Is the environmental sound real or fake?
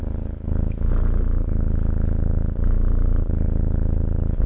real